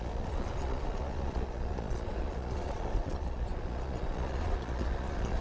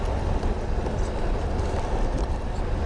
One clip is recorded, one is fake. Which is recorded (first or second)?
second